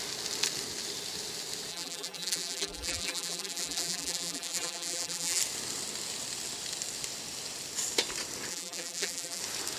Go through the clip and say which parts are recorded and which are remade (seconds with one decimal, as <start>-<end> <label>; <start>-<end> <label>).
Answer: 0.0-1.7 recorded; 1.7-5.4 remade; 5.4-8.5 recorded; 8.5-9.4 remade; 9.4-9.8 recorded